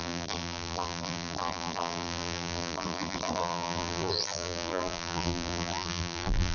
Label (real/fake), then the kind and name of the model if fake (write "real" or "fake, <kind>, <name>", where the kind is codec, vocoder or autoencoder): fake, vocoder, BigVGAN v2